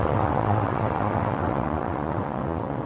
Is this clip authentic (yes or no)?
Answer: no